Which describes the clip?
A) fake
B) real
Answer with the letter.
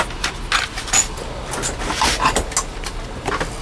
B